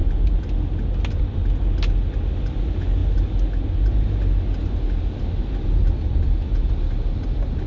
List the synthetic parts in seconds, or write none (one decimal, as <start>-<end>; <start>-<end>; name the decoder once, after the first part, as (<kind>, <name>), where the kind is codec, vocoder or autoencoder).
none